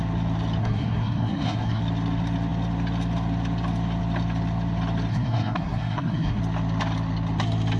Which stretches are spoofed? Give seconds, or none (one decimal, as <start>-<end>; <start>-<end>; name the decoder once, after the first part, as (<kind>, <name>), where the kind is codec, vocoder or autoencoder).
0.6-1.8 (codec, SNAC); 5.1-6.4

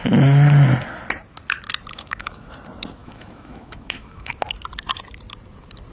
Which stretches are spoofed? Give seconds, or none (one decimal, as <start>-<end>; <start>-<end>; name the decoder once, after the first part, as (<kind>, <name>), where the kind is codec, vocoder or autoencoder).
1.9-2.5 (autoencoder, DAC-VAE); 3.0-4.3

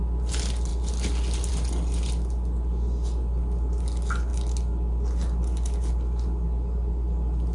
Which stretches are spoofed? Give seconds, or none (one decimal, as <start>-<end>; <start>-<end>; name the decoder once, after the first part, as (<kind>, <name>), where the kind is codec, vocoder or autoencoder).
none

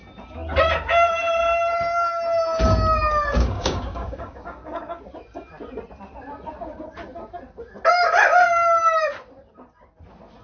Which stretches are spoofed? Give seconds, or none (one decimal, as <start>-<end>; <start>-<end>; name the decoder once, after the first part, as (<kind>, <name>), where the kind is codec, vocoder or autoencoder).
3.3-5.0 (codec, DAC)

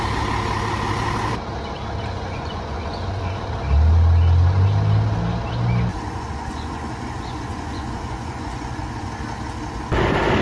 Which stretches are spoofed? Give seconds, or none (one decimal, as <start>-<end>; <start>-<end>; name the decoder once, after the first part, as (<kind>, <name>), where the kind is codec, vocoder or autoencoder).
2.1-3.2 (vocoder, Vocos); 5.9-9.1